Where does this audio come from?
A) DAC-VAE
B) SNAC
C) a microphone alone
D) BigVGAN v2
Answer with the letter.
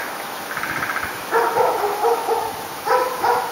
A